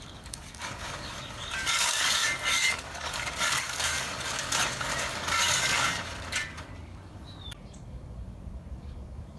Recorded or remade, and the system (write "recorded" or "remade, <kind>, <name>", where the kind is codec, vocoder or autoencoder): remade, codec, DAC